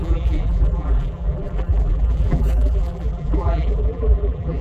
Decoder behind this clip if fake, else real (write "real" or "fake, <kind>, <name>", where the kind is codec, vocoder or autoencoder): fake, vocoder, BigVGAN v2